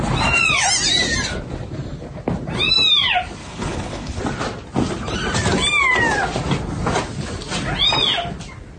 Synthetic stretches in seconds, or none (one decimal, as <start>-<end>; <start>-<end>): 3.4-4.2